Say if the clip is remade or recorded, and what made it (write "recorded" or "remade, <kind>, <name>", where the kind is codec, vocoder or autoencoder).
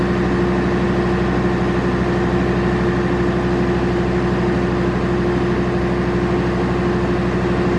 recorded